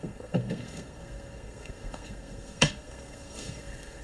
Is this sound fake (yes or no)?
yes